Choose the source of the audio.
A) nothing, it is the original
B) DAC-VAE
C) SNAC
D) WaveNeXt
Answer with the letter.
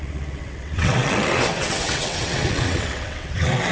D